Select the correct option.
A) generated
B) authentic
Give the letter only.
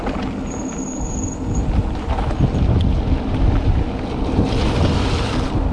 B